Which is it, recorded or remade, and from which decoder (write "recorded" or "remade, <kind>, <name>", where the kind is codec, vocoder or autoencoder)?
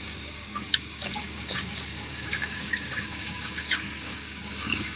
remade, codec, DAC